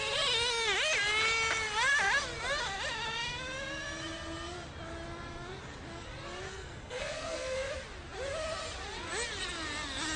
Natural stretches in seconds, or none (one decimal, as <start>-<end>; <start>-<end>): 0.0-6.5; 7.7-10.2